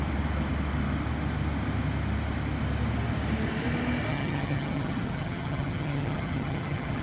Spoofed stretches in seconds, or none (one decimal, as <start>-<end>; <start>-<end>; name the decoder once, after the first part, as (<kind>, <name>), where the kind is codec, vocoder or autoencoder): 4.1-7.0 (vocoder, HiFi-GAN)